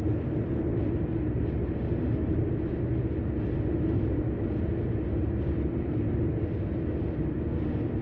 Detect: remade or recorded recorded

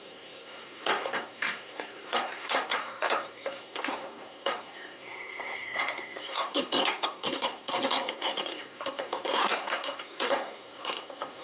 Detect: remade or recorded remade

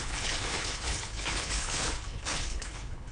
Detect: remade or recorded remade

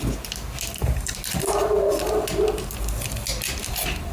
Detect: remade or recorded recorded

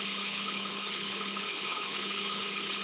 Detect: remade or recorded remade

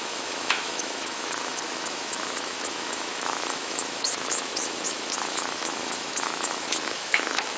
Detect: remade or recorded remade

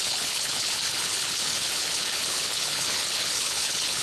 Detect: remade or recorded remade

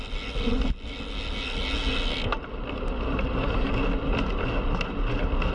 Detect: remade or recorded recorded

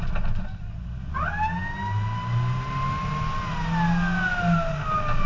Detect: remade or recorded recorded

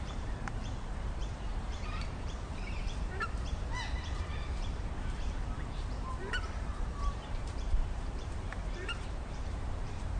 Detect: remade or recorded remade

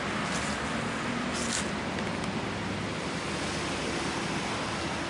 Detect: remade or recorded recorded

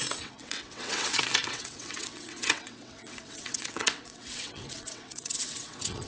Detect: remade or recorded remade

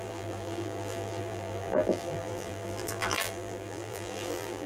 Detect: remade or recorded remade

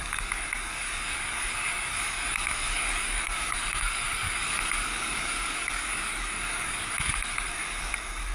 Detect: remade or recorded remade